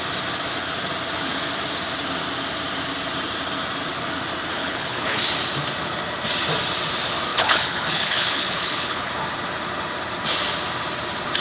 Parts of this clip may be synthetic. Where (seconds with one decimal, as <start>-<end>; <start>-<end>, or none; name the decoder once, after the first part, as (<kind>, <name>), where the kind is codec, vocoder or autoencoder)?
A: 4.5-5.2 (codec, HILCodec); 7.3-9.1